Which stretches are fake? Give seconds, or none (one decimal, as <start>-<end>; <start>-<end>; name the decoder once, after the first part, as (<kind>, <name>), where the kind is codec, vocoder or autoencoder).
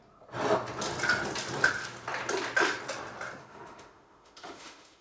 3.4-5.0 (autoencoder, DAC-VAE)